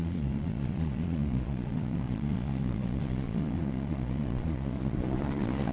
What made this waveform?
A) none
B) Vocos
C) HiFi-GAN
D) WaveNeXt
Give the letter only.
B